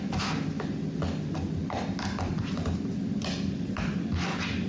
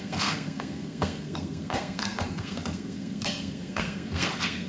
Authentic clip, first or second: first